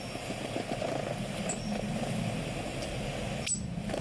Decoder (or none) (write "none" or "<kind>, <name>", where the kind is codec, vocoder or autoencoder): none